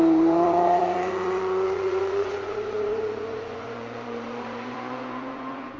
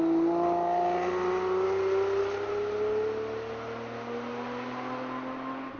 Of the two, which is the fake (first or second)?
first